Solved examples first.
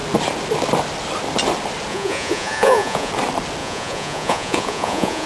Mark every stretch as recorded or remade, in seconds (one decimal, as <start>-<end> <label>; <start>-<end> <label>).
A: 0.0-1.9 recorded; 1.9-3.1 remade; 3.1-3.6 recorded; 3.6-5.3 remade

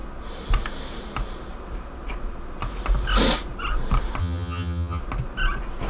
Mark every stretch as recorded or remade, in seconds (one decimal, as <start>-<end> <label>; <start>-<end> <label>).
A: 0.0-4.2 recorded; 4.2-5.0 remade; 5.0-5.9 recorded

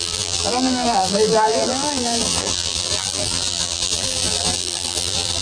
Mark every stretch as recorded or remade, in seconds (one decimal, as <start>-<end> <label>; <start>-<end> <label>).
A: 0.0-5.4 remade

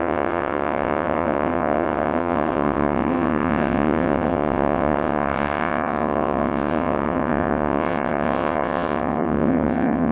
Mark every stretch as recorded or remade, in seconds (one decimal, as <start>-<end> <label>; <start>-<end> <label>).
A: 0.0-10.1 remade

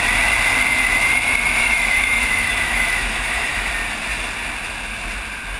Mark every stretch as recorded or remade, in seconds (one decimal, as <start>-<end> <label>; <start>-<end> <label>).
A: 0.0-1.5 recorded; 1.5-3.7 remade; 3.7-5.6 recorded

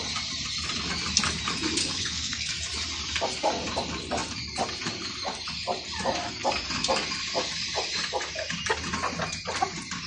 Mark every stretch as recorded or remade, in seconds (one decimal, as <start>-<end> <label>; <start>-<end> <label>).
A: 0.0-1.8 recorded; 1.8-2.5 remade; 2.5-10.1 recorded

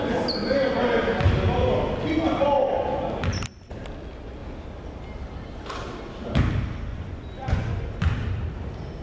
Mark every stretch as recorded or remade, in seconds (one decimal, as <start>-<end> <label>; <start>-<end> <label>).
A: 0.0-6.9 recorded; 6.9-7.8 remade; 7.8-9.0 recorded